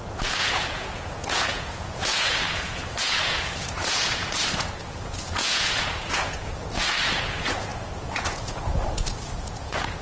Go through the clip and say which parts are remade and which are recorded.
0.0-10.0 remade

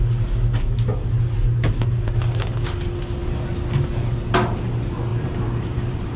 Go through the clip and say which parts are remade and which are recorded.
0.0-5.1 recorded; 5.1-6.2 remade

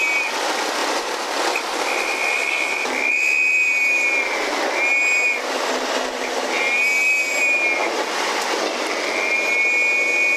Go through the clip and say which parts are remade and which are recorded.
0.0-7.8 recorded; 7.8-8.3 remade; 8.3-10.4 recorded

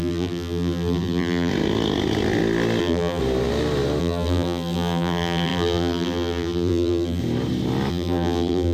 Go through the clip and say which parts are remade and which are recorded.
0.0-1.5 remade; 1.5-2.8 recorded; 2.8-3.2 remade; 3.2-4.0 recorded; 4.0-7.2 remade; 7.2-7.9 recorded; 7.9-8.7 remade

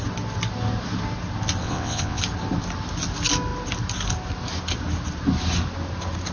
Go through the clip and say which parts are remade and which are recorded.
0.0-1.6 recorded; 1.6-2.2 remade; 2.2-6.3 recorded

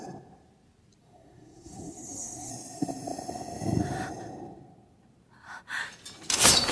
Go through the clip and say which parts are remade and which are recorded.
0.0-1.0 recorded; 1.0-2.5 remade; 2.5-6.7 recorded

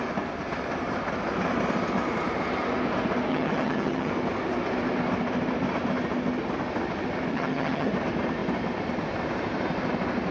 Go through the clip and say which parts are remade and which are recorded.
0.0-3.3 recorded; 3.3-4.1 remade; 4.1-7.3 recorded; 7.3-7.9 remade; 7.9-10.3 recorded